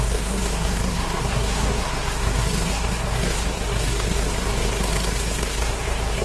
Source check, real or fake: fake